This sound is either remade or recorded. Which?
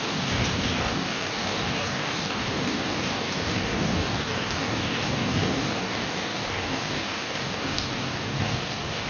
remade